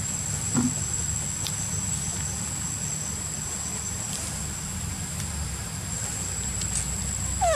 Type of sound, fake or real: real